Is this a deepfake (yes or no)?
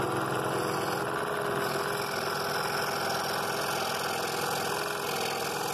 no